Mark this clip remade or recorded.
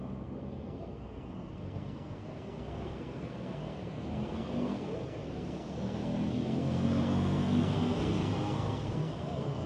remade